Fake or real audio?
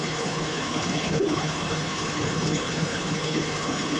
fake